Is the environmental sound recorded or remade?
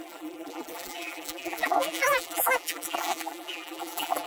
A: remade